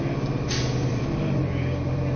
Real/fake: fake